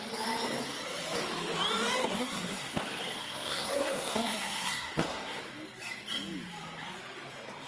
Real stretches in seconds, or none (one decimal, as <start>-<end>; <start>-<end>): 0.0-2.1; 2.8-3.2; 5.4-7.7